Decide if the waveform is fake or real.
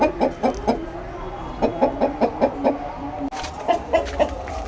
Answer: real